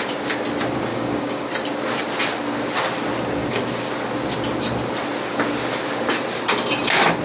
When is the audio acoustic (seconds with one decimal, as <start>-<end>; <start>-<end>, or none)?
0.0-0.9; 1.5-3.4; 3.9-7.2